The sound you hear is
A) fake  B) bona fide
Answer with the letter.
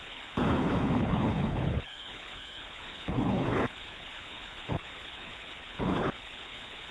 A